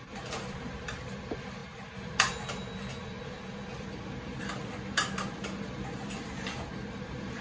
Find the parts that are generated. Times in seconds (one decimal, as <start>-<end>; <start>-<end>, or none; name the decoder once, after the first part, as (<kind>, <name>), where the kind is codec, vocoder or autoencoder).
none